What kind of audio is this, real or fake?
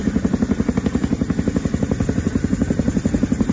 real